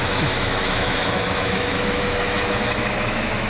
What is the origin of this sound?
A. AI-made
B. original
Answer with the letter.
A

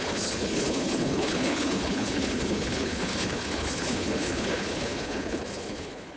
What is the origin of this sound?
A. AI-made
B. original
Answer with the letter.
A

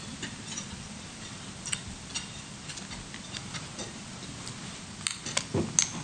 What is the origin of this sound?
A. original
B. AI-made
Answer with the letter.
A